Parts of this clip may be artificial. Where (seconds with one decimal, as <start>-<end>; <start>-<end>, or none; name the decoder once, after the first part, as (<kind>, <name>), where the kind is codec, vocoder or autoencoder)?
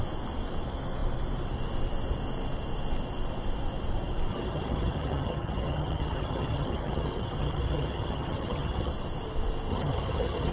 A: 4.3-8.9 (vocoder, HiFi-GAN); 9.7-10.5